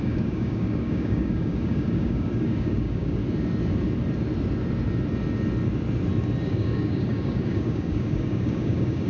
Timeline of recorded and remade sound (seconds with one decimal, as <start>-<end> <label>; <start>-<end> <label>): 0.0-3.2 remade; 3.2-6.5 recorded; 6.5-9.1 remade